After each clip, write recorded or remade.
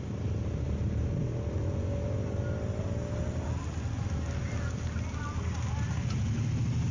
recorded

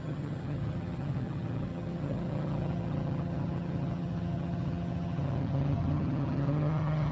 remade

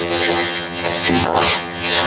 remade